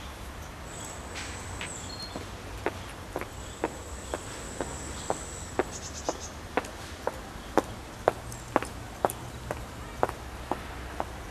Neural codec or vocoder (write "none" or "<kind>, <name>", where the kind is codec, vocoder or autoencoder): none